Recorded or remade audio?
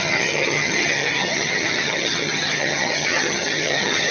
remade